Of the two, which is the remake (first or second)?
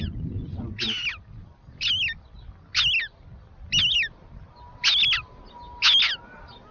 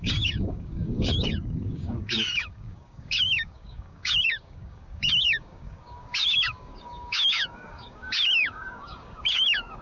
second